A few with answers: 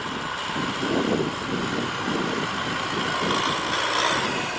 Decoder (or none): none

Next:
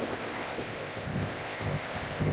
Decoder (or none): codec, ZipCodec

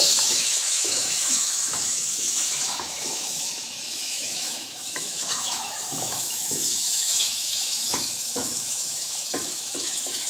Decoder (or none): autoencoder, DAC-VAE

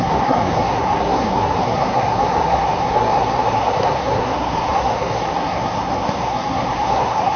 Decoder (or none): codec, SNAC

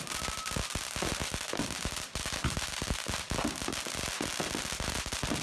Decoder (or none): none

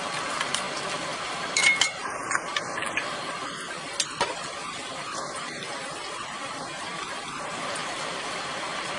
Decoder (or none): vocoder, BigVGAN v2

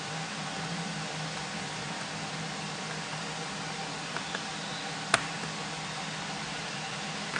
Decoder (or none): vocoder, BigVGAN v2